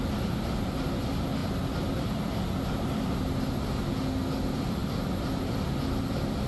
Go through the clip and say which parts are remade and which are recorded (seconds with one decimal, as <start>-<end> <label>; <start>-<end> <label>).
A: 0.0-6.5 recorded